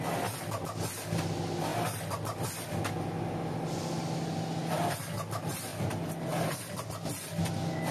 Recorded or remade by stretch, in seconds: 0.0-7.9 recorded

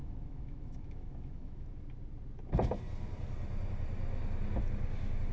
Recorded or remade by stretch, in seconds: 0.0-1.7 remade; 1.7-5.3 recorded